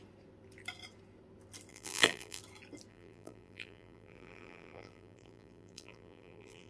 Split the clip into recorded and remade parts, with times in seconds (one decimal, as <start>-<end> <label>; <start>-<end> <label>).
0.0-1.7 recorded; 1.7-2.4 remade; 2.4-2.9 recorded; 2.9-6.7 remade